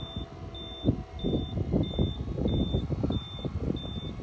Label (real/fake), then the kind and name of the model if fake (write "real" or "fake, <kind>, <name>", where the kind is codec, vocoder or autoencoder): real